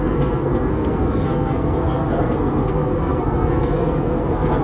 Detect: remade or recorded remade